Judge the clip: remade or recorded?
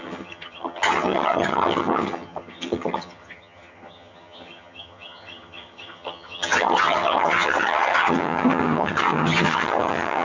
remade